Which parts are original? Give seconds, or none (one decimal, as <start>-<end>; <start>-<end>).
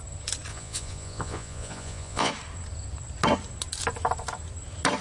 0.0-0.5; 2.3-5.0